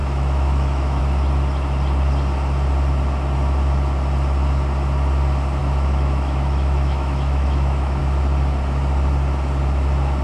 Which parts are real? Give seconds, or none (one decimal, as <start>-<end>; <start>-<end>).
1.0-5.6; 8.0-10.2